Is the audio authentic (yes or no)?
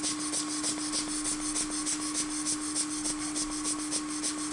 yes